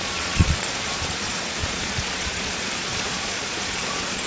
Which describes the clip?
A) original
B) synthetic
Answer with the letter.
B